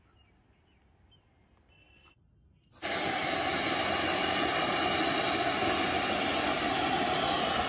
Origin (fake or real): real